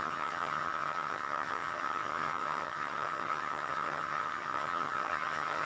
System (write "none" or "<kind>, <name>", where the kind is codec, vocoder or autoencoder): vocoder, HiFi-GAN